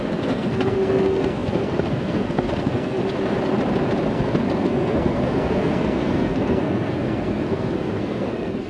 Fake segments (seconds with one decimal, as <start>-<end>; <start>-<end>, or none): 0.0-3.0; 4.1-8.7